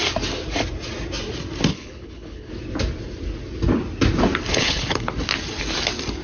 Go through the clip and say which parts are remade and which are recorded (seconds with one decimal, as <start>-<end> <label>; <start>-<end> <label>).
0.0-1.7 recorded; 1.7-2.5 remade; 2.5-4.5 recorded; 4.5-5.1 remade; 5.1-6.2 recorded

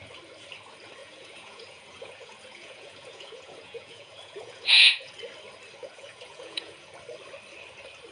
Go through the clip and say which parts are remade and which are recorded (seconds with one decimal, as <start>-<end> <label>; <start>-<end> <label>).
0.0-1.0 recorded; 1.0-5.1 remade; 5.1-5.8 recorded; 5.8-6.9 remade; 6.9-8.1 recorded

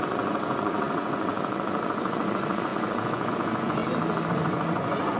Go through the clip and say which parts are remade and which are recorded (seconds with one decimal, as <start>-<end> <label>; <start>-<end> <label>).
0.0-3.8 remade; 3.8-4.3 recorded; 4.3-5.2 remade